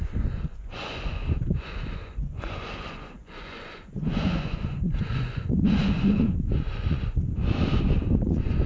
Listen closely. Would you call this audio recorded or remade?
remade